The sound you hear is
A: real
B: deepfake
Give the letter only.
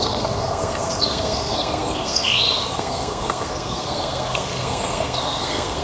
B